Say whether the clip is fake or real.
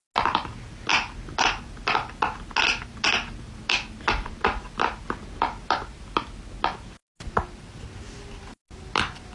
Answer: real